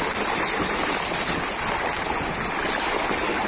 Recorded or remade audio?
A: remade